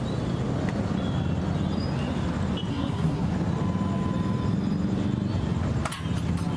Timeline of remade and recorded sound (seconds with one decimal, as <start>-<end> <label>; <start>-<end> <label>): 0.0-2.7 recorded; 2.7-3.3 remade; 3.3-6.6 recorded